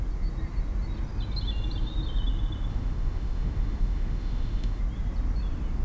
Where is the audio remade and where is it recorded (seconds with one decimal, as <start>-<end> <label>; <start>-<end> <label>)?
0.0-2.7 recorded; 2.7-4.8 remade; 4.8-5.8 recorded